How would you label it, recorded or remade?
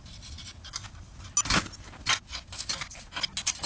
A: recorded